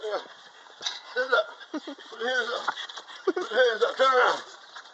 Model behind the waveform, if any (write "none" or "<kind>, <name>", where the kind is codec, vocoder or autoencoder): vocoder, Vocos